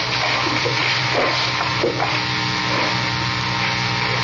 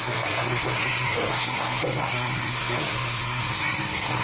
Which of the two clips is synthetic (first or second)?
second